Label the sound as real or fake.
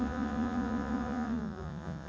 fake